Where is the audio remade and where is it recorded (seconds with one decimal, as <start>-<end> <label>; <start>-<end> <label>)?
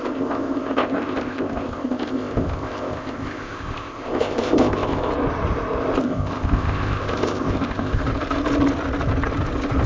0.0-5.1 remade; 5.1-6.0 recorded; 6.0-8.0 remade; 8.0-9.9 recorded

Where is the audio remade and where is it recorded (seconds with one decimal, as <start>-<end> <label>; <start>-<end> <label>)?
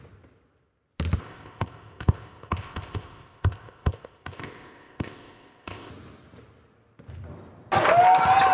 0.0-1.2 recorded; 1.2-5.9 remade; 5.9-8.5 recorded